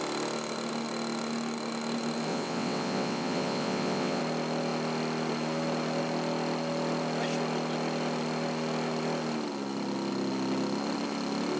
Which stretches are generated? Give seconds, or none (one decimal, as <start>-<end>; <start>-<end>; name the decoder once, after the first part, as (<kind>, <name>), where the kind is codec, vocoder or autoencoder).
2.3-4.2 (vocoder, WaveNeXt)